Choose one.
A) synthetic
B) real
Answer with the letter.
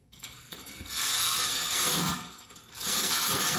A